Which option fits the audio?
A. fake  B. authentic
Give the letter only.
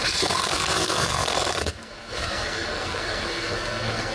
A